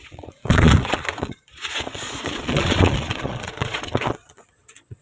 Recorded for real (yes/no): no